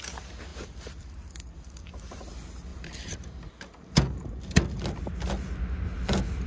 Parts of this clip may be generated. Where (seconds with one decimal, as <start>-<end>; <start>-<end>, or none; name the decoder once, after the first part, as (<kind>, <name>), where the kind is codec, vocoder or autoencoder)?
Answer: 0.5-2.2 (vocoder, BigVGAN v2); 2.7-4.4